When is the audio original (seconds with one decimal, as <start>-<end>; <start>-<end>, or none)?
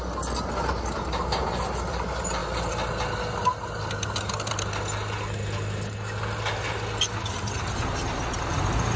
0.0-9.0